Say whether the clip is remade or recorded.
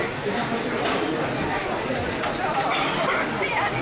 recorded